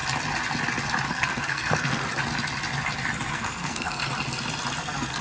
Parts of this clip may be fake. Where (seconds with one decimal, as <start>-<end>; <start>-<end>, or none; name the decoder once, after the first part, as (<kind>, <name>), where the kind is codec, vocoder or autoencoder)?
1.1-2.0 (codec, SNAC); 3.3-4.0; 4.8-5.2